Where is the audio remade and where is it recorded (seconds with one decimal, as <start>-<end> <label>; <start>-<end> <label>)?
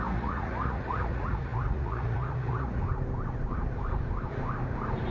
0.0-2.8 remade; 2.8-5.1 recorded